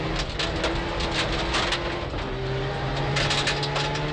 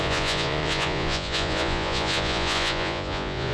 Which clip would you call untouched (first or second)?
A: first